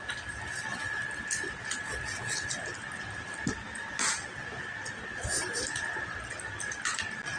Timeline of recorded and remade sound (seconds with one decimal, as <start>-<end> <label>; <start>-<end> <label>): 0.0-7.4 recorded